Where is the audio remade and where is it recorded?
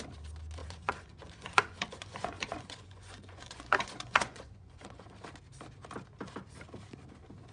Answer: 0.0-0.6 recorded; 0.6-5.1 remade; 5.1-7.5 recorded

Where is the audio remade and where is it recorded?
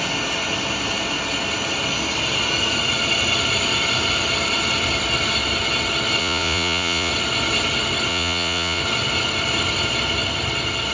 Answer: 0.0-6.2 recorded; 6.2-7.1 remade; 7.1-8.1 recorded; 8.1-8.8 remade; 8.8-10.9 recorded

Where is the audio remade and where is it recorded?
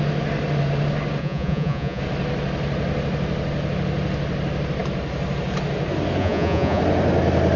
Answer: 0.0-1.2 recorded; 1.2-2.0 remade; 2.0-6.2 recorded; 6.2-6.8 remade; 6.8-7.6 recorded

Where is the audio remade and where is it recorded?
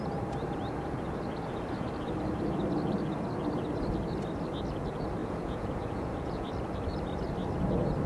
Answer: 0.0-5.2 recorded; 5.2-6.5 remade; 6.5-8.1 recorded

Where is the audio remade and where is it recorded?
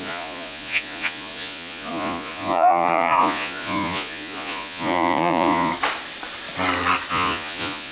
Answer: 0.0-5.7 remade; 5.7-7.1 recorded; 7.1-7.9 remade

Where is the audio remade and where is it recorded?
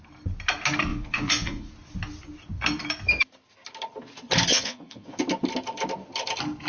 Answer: 0.0-0.9 recorded; 0.9-1.7 remade; 1.7-4.5 recorded; 4.5-5.2 remade; 5.2-6.7 recorded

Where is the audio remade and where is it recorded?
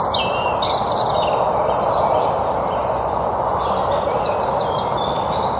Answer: 0.0-2.8 recorded; 2.8-3.8 remade; 3.8-5.6 recorded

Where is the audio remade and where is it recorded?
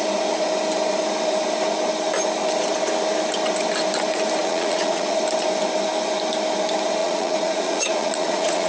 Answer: 0.0-4.4 recorded; 4.4-5.2 remade; 5.2-7.0 recorded; 7.0-8.7 remade